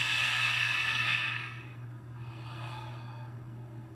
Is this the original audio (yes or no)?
no